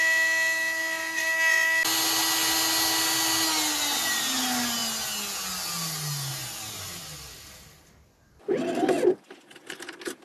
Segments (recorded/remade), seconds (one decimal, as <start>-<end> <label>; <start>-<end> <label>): 0.0-10.2 recorded